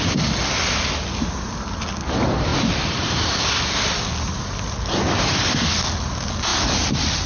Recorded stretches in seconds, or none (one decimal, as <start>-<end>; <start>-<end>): 0.0-7.3